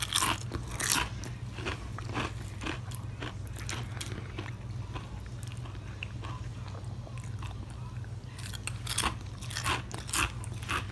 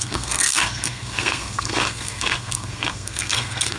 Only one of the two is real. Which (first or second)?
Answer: first